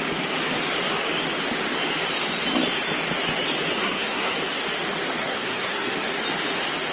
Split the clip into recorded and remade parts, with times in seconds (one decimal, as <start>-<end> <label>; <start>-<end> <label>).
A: 0.0-3.7 recorded; 3.7-4.4 remade; 4.4-5.2 recorded; 5.2-6.1 remade; 6.1-6.9 recorded